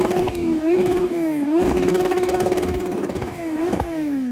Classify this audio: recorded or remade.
remade